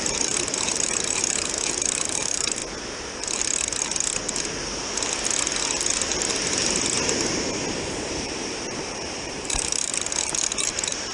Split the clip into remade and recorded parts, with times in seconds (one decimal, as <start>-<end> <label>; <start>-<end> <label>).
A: 0.0-2.6 remade; 2.6-7.7 recorded; 7.7-9.9 remade; 9.9-10.6 recorded; 10.6-11.1 remade